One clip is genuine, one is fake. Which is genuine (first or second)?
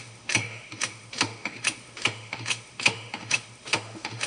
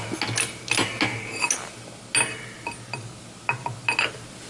second